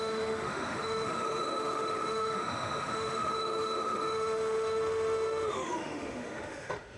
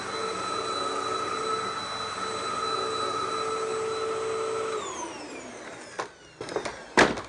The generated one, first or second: first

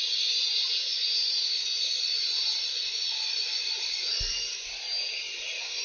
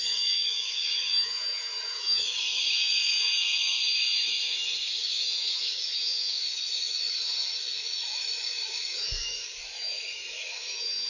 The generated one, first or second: second